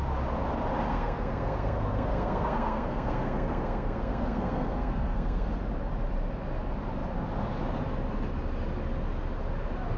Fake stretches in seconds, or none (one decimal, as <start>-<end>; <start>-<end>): 0.9-5.5